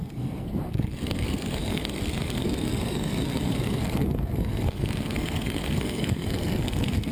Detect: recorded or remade remade